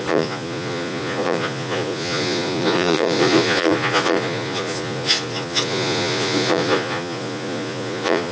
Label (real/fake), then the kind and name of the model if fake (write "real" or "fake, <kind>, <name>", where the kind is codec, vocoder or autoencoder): fake, vocoder, Vocos